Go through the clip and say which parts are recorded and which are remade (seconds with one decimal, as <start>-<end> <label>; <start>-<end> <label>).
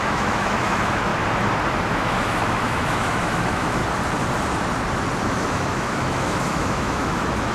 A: 0.0-1.1 remade; 1.1-1.9 recorded; 1.9-3.8 remade; 3.8-5.3 recorded; 5.3-7.5 remade